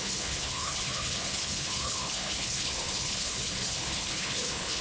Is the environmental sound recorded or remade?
remade